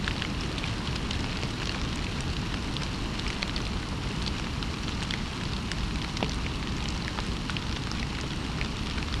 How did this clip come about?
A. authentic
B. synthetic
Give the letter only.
A